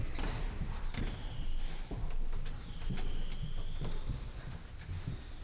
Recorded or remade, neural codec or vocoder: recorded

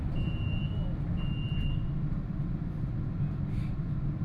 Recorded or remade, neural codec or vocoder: recorded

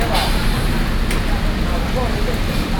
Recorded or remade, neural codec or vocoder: recorded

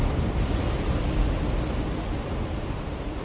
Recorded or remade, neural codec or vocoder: remade, vocoder, BigVGAN v2